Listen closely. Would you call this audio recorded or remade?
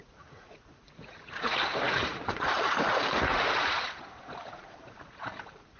remade